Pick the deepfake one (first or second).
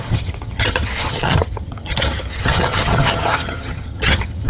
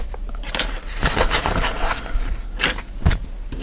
first